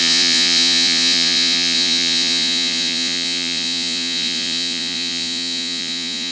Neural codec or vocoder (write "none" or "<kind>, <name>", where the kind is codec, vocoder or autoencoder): vocoder, Vocos